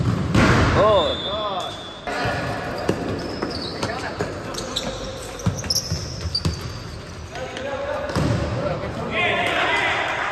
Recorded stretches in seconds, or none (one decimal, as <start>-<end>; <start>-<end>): 0.0-10.3